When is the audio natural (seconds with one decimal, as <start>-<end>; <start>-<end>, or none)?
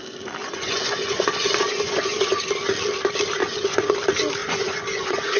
0.0-0.4; 2.4-3.4; 3.9-4.4